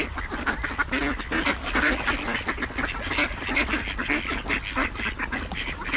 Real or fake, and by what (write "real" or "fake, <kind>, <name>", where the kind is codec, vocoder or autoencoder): real